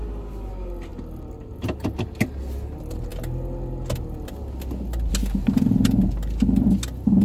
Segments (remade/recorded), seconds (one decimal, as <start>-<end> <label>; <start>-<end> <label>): 0.0-7.2 recorded